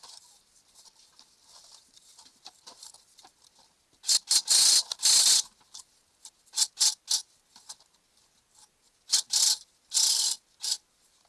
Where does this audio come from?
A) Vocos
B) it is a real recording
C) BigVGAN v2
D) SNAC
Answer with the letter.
B